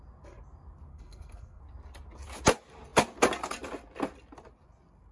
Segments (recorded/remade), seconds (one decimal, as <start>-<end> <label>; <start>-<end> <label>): 0.0-0.9 recorded; 0.9-1.6 remade; 1.6-5.1 recorded